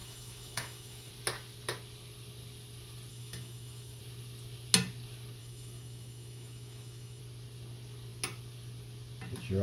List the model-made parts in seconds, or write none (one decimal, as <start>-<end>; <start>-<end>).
0.0-1.1; 3.1-4.0; 5.4-7.2